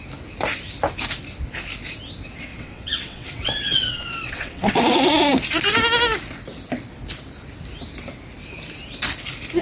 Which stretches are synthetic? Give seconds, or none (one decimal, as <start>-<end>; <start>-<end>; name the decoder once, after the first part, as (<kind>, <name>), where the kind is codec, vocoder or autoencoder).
2.5-5.3 (vocoder, WaveNeXt)